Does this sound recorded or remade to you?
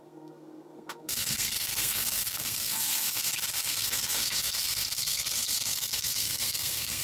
remade